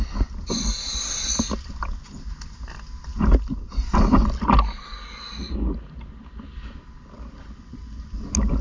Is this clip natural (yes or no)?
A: yes